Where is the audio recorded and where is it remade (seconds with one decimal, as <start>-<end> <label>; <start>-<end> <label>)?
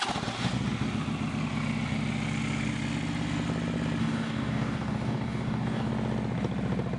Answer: 0.0-4.0 recorded; 4.0-5.9 remade; 5.9-7.0 recorded